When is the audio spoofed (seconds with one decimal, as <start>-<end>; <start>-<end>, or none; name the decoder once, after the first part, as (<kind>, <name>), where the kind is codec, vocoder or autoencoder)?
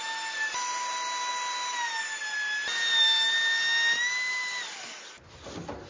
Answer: none